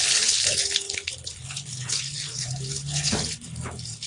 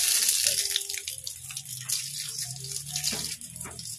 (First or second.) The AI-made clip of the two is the first